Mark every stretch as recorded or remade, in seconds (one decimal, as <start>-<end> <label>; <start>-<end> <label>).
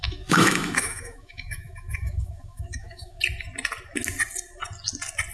0.0-3.2 remade; 3.2-5.3 recorded